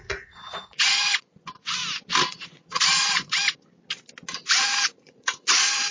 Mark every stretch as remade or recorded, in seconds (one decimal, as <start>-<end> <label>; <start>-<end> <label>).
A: 0.0-1.8 remade; 1.8-2.3 recorded; 2.3-3.4 remade; 3.4-4.4 recorded; 4.4-5.9 remade